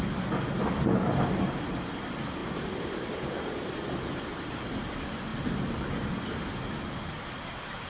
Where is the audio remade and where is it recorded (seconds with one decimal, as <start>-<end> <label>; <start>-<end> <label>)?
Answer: 0.0-7.9 recorded